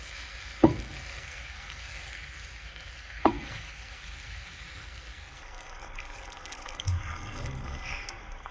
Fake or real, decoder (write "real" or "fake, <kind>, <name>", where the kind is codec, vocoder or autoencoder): fake, codec, SNAC